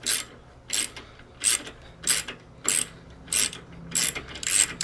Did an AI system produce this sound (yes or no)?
no